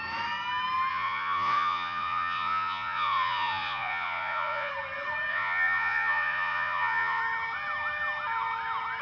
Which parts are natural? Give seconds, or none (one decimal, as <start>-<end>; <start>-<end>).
0.0-0.9; 4.7-5.3; 7.2-9.0